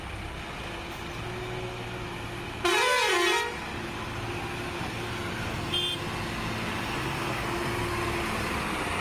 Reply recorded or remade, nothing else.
recorded